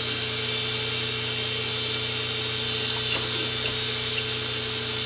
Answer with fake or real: real